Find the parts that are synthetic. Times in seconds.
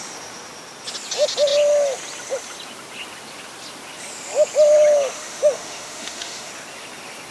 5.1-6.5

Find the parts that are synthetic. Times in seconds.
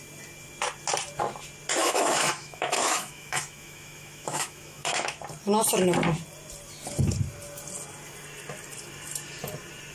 1.8-5.2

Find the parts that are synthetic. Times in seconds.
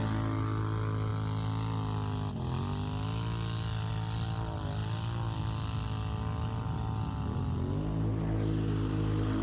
none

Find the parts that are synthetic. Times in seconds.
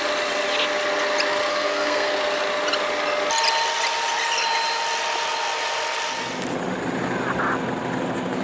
1.5-2.2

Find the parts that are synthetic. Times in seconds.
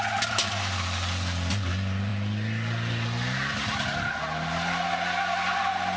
none